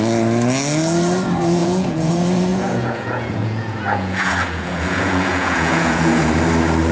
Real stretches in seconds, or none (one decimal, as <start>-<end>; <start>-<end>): 0.0-1.6; 2.1-2.5; 6.3-6.9